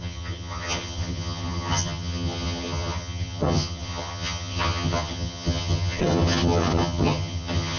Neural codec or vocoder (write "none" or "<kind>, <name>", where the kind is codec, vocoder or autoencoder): vocoder, HiFi-GAN